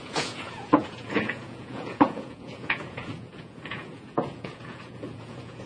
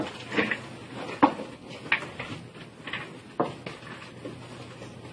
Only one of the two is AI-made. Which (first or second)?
first